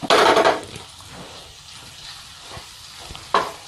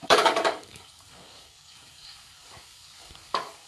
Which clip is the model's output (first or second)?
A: second